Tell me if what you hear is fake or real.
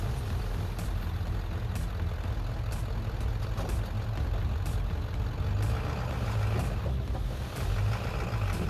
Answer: real